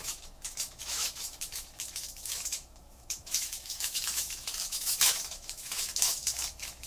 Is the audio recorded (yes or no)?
no